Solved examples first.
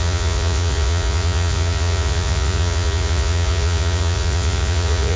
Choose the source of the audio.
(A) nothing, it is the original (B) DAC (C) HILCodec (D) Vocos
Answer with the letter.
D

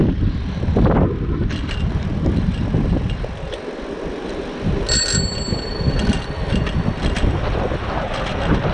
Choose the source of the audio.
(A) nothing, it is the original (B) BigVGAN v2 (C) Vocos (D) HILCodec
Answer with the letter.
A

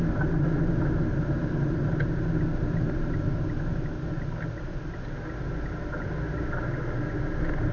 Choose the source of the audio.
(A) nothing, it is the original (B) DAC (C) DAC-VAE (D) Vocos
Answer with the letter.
A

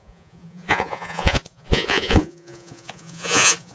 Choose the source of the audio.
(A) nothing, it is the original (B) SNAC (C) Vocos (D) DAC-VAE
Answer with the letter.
C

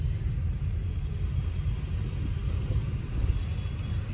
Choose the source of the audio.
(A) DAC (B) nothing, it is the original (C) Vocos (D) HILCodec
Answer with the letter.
B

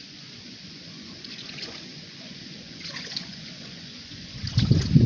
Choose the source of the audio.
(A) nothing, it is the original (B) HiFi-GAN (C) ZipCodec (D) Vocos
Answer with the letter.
D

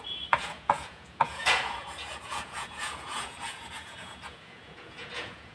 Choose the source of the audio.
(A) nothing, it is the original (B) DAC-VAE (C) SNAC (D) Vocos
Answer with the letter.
D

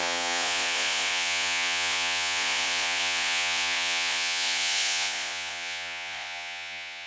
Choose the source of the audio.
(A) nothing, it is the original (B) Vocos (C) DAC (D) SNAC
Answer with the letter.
B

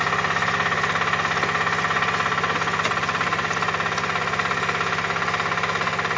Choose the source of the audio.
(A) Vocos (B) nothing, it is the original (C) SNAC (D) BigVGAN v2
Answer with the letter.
B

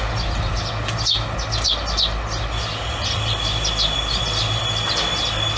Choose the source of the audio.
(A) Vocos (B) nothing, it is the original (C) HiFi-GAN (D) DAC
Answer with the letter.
B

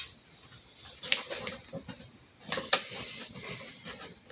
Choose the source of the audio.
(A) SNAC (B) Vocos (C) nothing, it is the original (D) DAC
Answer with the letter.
C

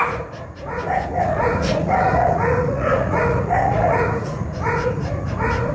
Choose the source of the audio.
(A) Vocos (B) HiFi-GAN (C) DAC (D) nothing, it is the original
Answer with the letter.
A